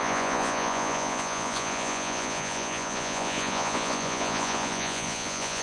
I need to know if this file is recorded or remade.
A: remade